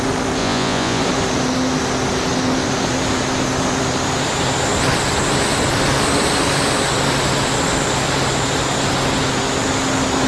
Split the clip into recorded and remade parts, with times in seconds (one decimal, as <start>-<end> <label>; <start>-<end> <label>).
0.0-0.4 recorded; 0.4-1.0 remade; 1.0-10.3 recorded